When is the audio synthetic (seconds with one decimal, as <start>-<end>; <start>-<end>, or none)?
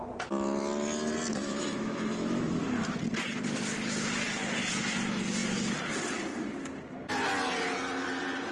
1.3-2.6